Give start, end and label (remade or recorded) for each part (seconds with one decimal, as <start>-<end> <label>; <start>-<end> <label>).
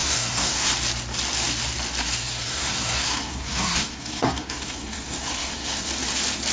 0.0-0.7 remade; 0.7-2.0 recorded; 2.0-5.9 remade; 5.9-6.5 recorded